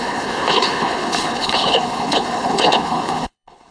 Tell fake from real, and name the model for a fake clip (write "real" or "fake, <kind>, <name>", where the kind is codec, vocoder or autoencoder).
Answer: fake, codec, HILCodec